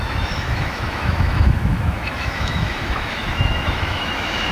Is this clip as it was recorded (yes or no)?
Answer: no